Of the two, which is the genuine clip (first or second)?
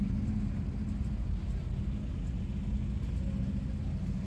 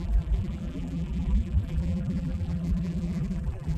first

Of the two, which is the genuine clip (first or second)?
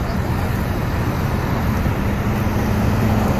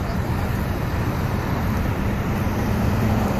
first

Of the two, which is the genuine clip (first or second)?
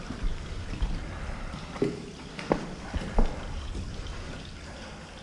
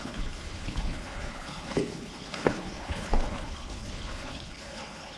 first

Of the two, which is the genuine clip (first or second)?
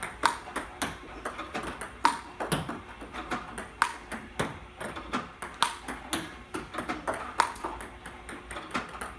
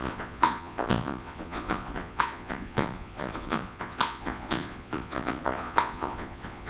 first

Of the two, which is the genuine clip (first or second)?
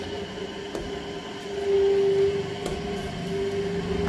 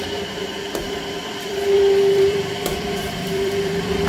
first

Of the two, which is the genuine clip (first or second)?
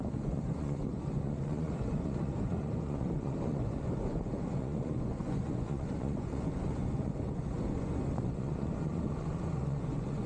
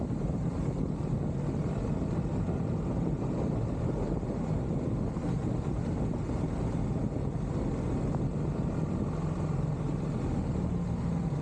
second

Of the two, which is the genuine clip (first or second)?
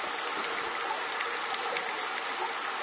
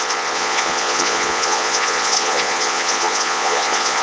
first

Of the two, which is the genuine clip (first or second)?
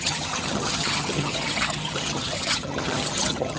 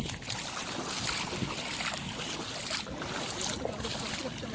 second